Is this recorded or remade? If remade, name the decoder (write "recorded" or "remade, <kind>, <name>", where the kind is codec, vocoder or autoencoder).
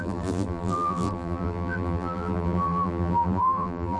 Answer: remade, vocoder, BigVGAN v2